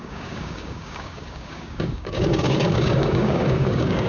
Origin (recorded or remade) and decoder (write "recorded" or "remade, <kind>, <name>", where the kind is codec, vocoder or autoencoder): remade, codec, DAC